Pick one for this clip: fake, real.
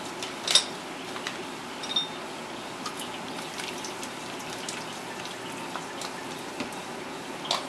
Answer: real